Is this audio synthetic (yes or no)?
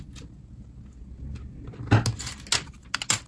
no